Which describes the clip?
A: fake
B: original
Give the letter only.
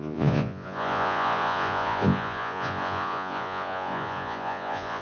A